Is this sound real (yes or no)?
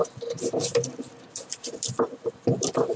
yes